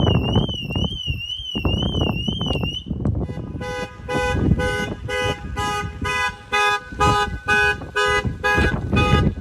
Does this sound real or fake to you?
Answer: real